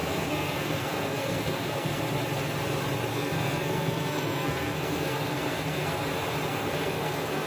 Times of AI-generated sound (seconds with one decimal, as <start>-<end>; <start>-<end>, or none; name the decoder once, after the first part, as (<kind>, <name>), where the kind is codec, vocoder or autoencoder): 0.0-2.0 (codec, SNAC); 3.1-6.1; 6.5-7.5